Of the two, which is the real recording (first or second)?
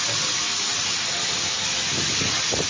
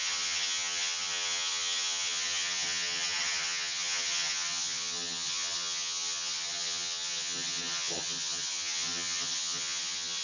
first